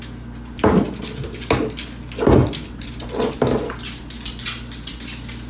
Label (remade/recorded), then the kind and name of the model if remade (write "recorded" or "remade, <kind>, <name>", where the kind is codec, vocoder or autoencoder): recorded